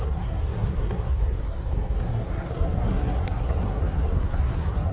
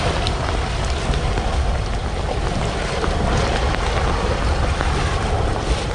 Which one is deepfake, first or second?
first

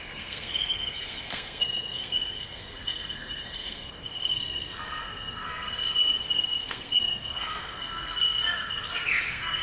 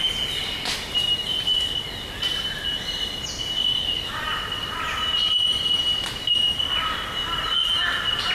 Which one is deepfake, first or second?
first